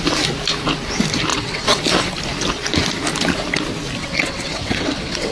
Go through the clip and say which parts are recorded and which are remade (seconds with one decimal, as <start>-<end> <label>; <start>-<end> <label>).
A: 0.0-1.3 recorded; 1.3-1.8 remade; 1.8-4.0 recorded; 4.0-5.3 remade